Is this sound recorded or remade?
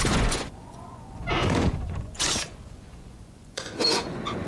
remade